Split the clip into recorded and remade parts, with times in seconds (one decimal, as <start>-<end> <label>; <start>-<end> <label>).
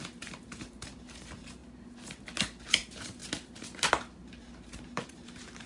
0.0-1.6 remade; 1.6-2.7 recorded; 2.7-3.2 remade; 3.2-3.9 recorded; 3.9-5.7 remade